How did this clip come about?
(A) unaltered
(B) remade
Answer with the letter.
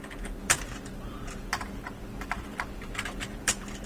B